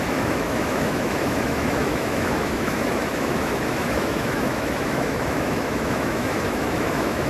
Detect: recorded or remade remade